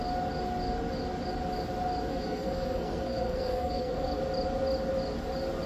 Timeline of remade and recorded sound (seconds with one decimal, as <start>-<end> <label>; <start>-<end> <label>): 0.0-2.1 recorded; 2.1-4.2 remade; 4.2-5.7 recorded